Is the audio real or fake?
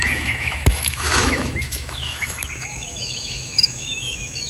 fake